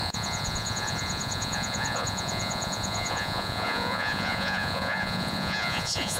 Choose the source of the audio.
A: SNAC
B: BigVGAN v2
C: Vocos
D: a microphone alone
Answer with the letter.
C